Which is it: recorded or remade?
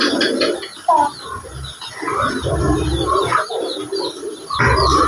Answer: recorded